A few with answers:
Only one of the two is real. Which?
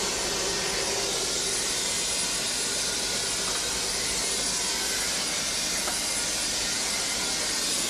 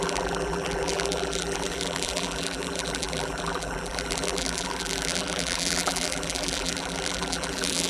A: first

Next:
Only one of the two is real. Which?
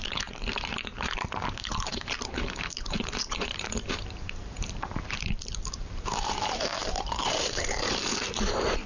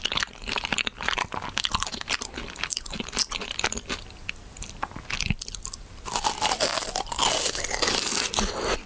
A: second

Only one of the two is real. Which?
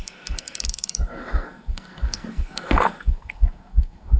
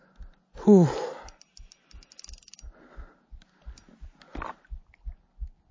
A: second